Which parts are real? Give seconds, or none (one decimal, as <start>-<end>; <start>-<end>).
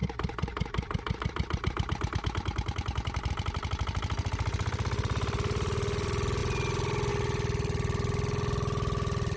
0.0-9.4